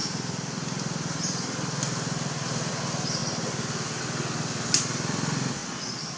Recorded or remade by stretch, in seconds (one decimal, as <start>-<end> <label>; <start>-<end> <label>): 0.0-2.7 remade; 2.7-3.2 recorded; 3.2-4.0 remade; 4.0-5.6 recorded; 5.6-6.2 remade